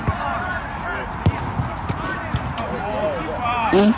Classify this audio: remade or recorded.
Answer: recorded